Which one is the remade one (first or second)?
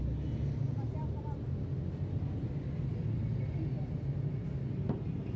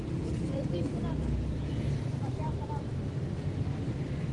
second